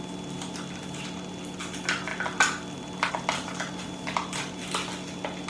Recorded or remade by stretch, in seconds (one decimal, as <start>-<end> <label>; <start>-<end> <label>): 0.0-5.5 recorded